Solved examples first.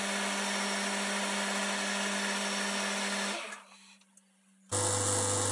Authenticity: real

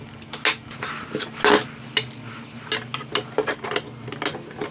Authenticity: real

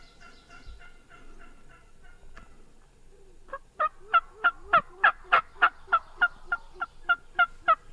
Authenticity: real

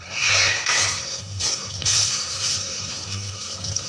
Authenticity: fake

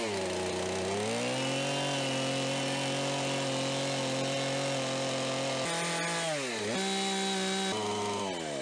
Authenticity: real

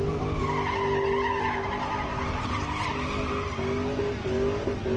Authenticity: real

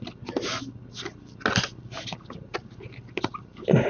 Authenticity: real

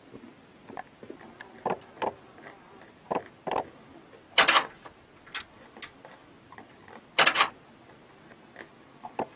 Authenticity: real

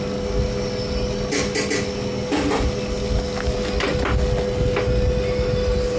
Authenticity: real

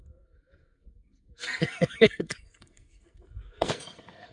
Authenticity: fake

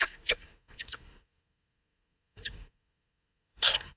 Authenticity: fake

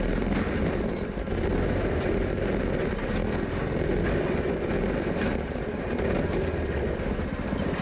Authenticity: real